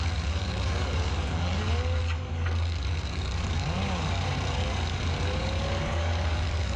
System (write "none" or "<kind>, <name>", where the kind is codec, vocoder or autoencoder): codec, DAC